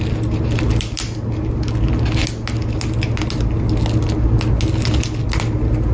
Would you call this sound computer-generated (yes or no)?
no